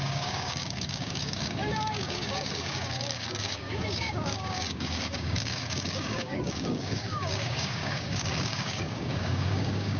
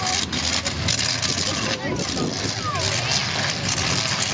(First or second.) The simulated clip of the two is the first